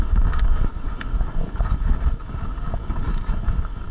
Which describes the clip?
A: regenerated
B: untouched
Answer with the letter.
A